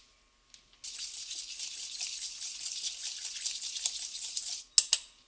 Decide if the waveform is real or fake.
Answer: real